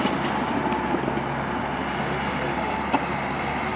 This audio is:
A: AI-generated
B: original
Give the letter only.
B